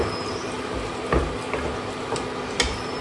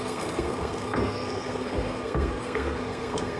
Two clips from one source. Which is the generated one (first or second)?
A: second